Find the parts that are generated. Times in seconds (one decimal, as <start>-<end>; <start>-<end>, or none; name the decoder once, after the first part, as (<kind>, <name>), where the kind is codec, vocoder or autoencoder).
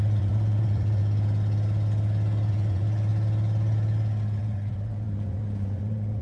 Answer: 0.0-1.0 (vocoder, Vocos); 2.5-3.1; 4.4-6.2